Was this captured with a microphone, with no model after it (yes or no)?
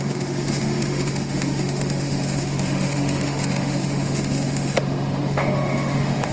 no